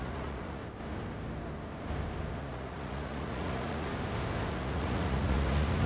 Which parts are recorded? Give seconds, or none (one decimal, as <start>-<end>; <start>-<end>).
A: 0.6-2.4; 3.9-4.5